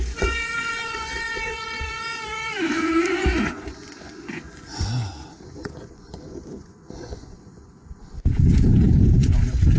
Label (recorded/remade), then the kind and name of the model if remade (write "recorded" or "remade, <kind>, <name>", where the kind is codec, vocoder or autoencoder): remade, vocoder, Vocos